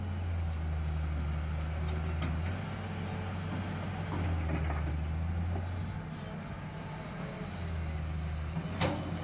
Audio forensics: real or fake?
real